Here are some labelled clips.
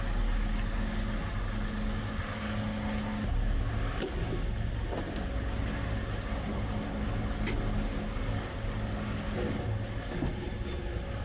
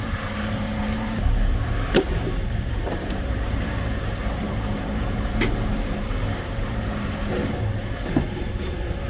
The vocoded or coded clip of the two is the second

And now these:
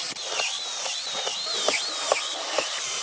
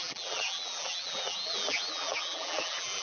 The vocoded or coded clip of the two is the second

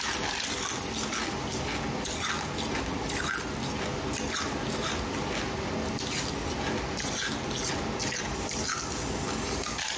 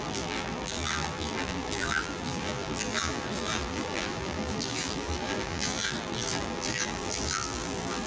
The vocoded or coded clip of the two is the second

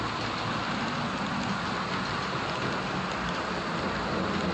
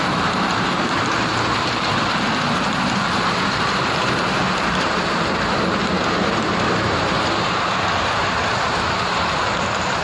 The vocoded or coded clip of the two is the second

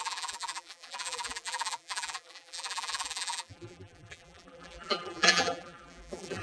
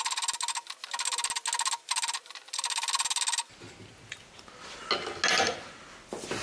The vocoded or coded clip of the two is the first